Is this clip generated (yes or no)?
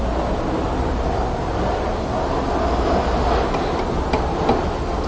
no